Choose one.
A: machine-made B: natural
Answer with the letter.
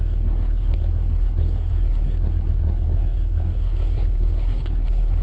A